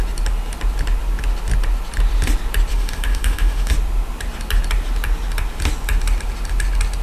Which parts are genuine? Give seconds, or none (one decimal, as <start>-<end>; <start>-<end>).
0.0-2.7; 3.7-7.0